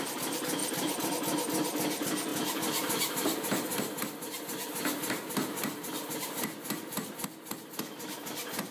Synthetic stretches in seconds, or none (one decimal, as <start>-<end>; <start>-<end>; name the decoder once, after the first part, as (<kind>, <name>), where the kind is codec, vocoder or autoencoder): 0.6-1.1 (vocoder, BigVGAN v2)